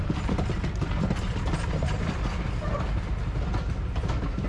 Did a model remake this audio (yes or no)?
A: no